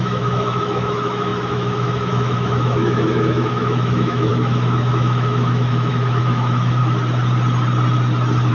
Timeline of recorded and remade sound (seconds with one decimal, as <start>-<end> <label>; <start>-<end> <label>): 0.0-6.8 remade; 6.8-8.5 recorded